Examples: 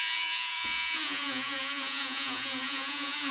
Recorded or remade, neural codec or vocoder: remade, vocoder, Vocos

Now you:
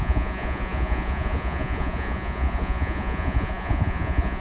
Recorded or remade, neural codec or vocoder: remade, vocoder, Vocos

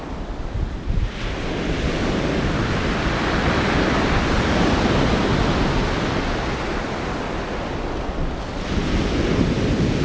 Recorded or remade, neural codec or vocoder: recorded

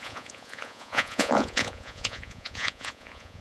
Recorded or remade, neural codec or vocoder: remade, vocoder, Vocos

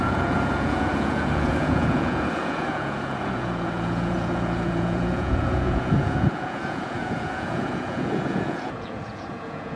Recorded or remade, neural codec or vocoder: remade, vocoder, Vocos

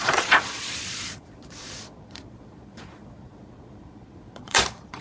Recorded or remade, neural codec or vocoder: remade, vocoder, Vocos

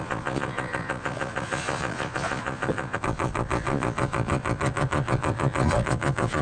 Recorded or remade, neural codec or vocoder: remade, vocoder, Vocos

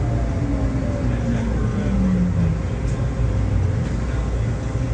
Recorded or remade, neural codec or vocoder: recorded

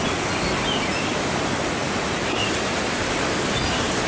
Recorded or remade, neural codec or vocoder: recorded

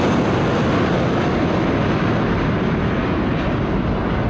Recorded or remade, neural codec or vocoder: recorded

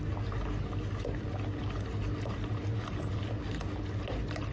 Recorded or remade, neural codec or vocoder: recorded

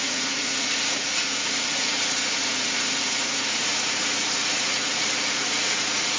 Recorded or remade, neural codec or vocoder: remade, vocoder, Vocos